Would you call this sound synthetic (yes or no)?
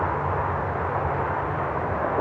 no